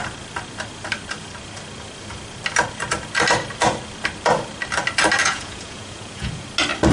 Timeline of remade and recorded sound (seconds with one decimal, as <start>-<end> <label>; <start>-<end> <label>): 0.0-5.2 recorded; 5.2-6.4 remade; 6.4-6.9 recorded